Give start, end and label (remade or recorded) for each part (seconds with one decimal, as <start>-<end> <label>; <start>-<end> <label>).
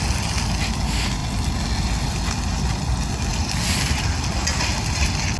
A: 0.0-5.4 recorded